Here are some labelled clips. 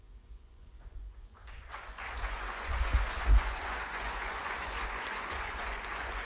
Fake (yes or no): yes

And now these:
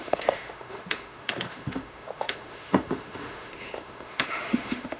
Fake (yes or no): yes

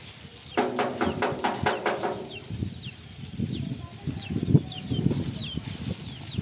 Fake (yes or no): no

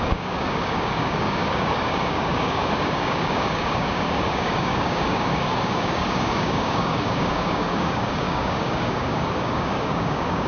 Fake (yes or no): yes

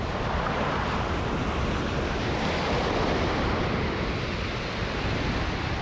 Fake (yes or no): no